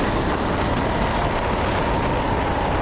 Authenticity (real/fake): real